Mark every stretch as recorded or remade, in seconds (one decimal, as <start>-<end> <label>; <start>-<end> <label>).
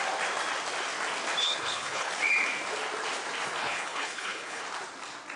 0.0-1.4 recorded; 1.4-2.1 remade; 2.1-3.6 recorded; 3.6-4.6 remade; 4.6-5.4 recorded